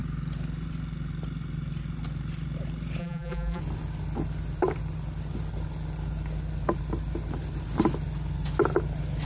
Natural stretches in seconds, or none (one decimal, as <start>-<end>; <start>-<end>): 0.0-3.0; 3.6-9.2